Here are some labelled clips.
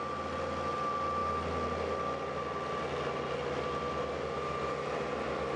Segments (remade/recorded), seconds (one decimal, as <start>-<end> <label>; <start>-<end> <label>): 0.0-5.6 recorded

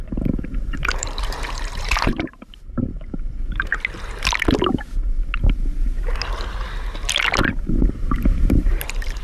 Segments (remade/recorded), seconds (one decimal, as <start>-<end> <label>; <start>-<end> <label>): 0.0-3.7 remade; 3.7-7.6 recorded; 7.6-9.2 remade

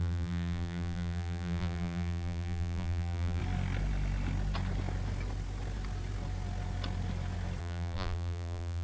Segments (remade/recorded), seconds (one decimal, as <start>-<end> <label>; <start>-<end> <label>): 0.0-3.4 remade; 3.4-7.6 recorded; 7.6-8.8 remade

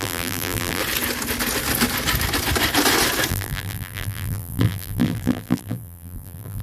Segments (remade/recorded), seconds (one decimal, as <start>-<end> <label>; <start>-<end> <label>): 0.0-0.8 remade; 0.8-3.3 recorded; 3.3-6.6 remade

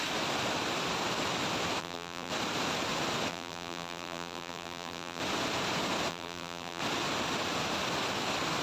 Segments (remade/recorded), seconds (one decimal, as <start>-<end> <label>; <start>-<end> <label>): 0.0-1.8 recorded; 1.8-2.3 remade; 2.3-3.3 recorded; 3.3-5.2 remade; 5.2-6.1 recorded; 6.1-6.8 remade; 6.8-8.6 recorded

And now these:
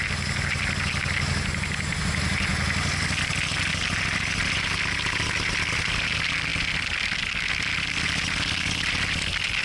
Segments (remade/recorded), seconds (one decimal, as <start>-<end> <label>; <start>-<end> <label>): 0.0-2.5 recorded; 2.5-3.7 remade; 3.7-9.6 recorded

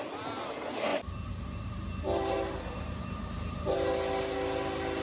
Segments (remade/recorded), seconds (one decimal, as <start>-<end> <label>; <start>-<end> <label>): 0.0-0.9 recorded; 0.9-3.9 remade; 3.9-5.0 recorded